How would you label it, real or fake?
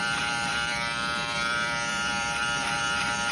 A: fake